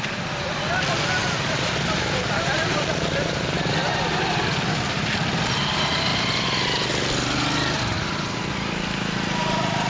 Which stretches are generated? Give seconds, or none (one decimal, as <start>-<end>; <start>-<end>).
1.2-3.7